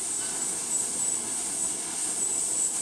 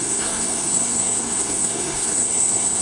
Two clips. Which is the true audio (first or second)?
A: first